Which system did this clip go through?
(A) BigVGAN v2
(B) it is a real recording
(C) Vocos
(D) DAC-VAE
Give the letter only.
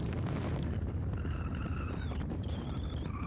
A